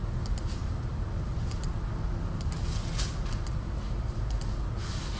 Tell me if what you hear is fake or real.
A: real